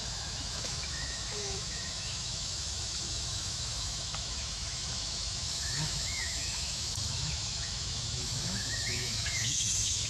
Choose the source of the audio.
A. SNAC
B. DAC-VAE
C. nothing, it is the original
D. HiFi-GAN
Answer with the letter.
B